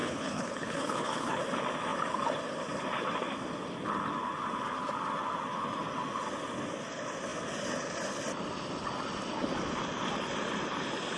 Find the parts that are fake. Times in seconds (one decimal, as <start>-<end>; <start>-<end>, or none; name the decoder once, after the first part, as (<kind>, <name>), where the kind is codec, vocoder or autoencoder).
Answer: 0.0-1.4 (codec, HILCodec)